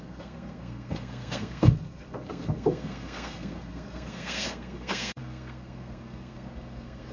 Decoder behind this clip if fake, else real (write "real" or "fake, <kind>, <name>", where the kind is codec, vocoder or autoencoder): fake, codec, SNAC